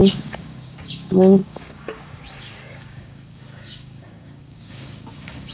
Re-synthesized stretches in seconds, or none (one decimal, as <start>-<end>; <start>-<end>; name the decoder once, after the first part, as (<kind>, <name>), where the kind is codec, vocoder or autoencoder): 0.0-5.5 (codec, DAC)

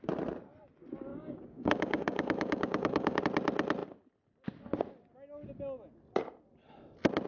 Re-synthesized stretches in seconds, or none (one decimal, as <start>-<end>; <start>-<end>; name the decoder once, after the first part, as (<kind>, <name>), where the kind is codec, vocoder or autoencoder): 1.1-3.2 (codec, DAC)